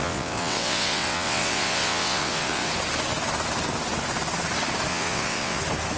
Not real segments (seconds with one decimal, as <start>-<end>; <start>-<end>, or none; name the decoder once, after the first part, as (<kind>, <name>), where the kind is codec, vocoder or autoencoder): 0.0-2.7 (vocoder, WaveNeXt); 4.9-5.6